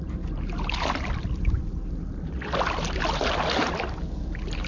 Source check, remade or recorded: recorded